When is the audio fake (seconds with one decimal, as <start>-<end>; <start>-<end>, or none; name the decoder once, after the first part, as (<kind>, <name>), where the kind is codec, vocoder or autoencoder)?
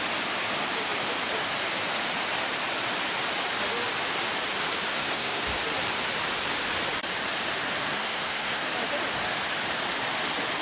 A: 4.9-5.4 (codec, SNAC); 7.9-8.7